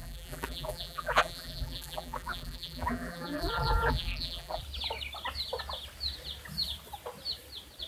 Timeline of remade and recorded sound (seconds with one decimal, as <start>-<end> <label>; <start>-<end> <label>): 0.0-4.6 remade; 4.6-7.9 recorded